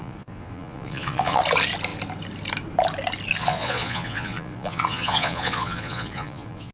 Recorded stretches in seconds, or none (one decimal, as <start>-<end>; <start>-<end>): 1.4-3.4